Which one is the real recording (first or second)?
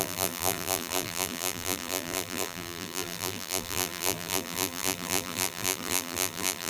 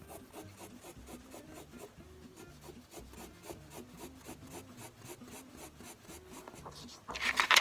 second